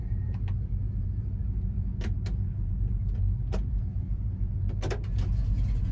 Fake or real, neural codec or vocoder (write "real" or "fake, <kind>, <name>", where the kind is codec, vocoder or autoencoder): real